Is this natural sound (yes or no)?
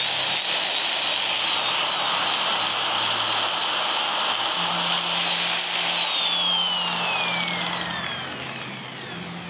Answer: yes